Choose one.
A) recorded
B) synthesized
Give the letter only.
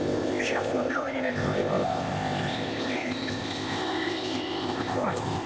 B